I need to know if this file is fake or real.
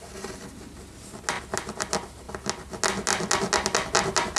real